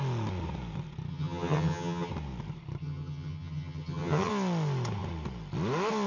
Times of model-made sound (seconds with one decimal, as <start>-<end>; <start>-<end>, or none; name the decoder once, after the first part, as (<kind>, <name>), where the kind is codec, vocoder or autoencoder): 1.1-2.1 (vocoder, HiFi-GAN); 2.8-4.3